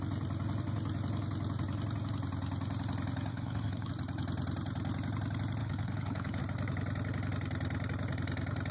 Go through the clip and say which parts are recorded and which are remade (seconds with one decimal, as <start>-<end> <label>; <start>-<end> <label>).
0.0-3.3 recorded; 3.3-3.9 remade; 3.9-5.6 recorded; 5.6-6.4 remade; 6.4-8.7 recorded